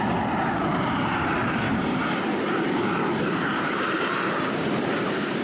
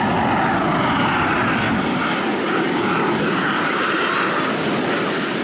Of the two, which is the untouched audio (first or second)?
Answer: second